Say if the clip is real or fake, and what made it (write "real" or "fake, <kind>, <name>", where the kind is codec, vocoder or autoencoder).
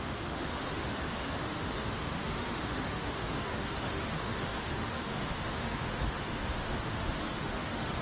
fake, autoencoder, DAC-VAE